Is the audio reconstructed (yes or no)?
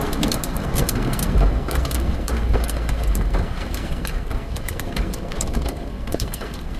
yes